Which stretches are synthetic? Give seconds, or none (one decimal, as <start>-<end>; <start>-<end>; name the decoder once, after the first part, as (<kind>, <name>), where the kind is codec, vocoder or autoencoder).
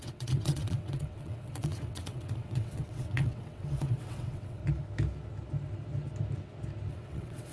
0.0-4.6 (vocoder, WaveNeXt); 6.9-7.5